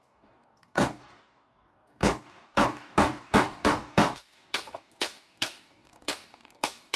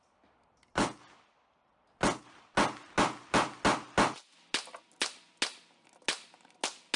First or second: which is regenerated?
first